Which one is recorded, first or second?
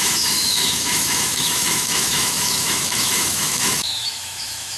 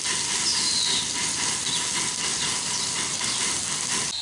second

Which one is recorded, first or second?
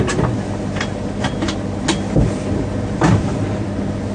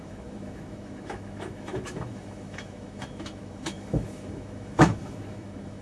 first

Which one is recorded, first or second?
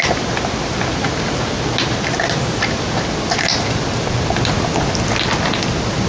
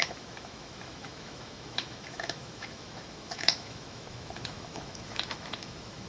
first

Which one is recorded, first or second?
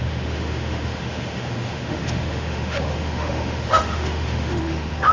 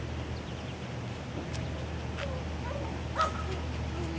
second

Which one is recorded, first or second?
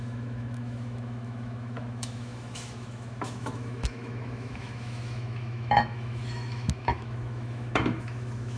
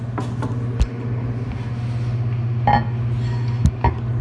second